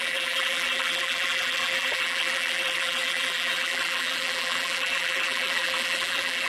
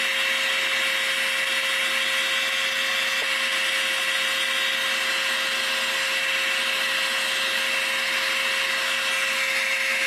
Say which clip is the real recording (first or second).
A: second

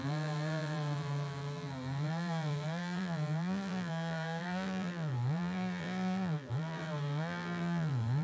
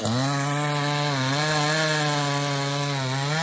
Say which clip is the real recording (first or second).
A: second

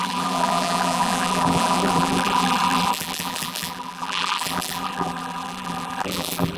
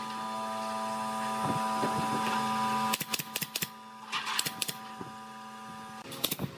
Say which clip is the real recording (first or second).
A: second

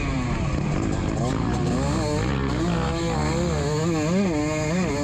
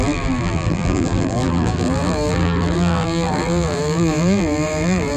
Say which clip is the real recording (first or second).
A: first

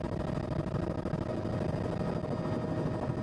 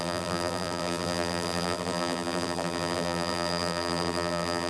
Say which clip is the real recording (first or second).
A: first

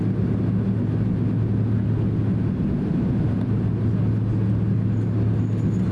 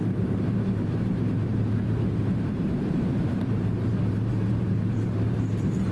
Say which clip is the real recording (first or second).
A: first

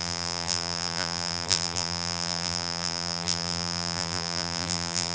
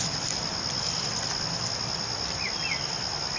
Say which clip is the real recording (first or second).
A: second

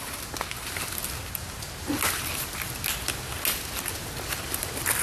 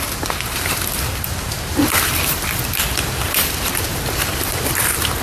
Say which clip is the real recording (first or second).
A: first